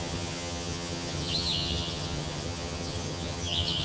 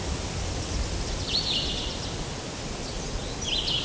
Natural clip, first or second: second